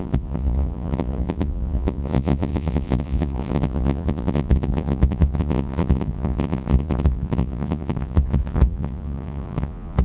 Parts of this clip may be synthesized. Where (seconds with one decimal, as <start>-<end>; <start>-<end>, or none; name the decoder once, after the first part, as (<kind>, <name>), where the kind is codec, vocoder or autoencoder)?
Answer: 0.0-10.0 (vocoder, Vocos)